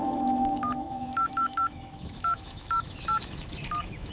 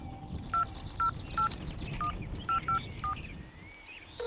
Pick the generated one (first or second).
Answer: first